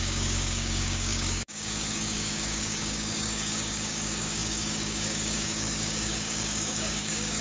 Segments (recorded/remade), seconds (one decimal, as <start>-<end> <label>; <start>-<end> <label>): 0.0-7.4 remade